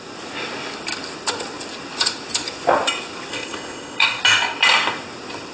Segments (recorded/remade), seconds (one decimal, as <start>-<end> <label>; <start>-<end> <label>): 0.0-3.3 recorded; 3.3-4.2 remade; 4.2-5.5 recorded